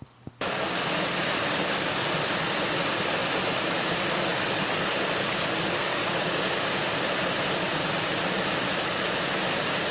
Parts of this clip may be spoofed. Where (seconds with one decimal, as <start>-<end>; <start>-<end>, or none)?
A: 5.9-6.4